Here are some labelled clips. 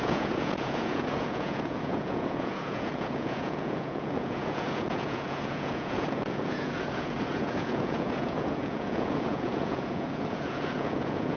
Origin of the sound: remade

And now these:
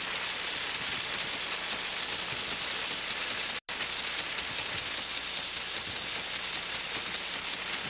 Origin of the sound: recorded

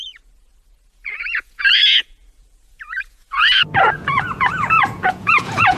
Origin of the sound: remade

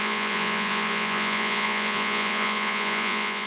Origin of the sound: remade